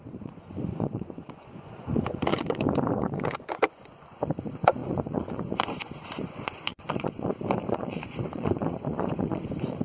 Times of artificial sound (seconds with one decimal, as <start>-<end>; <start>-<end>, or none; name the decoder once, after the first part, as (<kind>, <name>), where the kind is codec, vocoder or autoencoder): 0.0-9.8 (vocoder, Vocos)